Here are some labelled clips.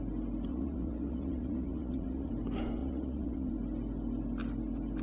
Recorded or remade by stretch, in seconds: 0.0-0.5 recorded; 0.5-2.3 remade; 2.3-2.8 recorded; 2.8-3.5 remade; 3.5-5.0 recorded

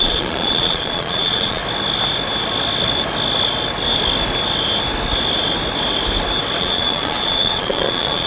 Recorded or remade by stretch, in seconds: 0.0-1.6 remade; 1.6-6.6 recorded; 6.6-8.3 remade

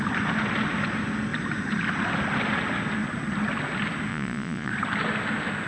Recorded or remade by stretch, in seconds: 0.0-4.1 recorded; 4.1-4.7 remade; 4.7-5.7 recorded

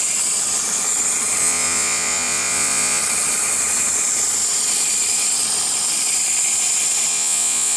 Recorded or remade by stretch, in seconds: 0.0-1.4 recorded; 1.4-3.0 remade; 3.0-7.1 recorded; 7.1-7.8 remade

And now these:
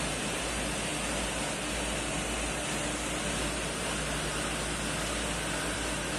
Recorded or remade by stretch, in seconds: 0.0-6.2 recorded

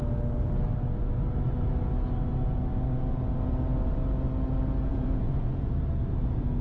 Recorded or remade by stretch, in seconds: 0.0-4.9 recorded; 4.9-5.7 remade; 5.7-6.6 recorded